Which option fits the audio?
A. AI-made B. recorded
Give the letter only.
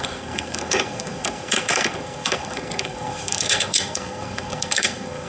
A